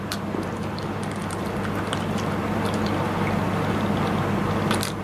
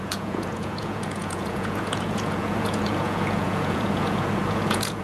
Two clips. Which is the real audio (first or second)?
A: first